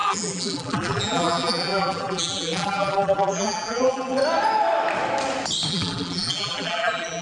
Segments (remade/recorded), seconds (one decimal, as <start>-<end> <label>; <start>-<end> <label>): 0.0-4.2 remade; 4.2-5.7 recorded; 5.7-7.2 remade